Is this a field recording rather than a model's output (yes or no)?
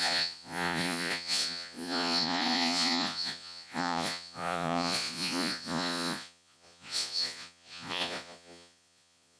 no